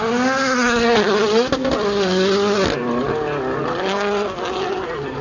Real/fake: real